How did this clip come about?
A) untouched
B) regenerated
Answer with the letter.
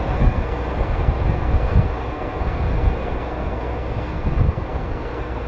B